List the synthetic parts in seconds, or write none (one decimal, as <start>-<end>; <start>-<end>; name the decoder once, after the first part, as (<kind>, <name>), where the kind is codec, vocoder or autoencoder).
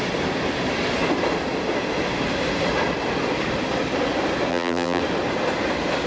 4.5-5.0 (vocoder, BigVGAN v2)